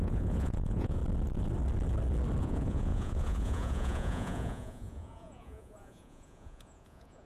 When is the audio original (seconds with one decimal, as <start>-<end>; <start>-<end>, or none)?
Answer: 1.0-2.4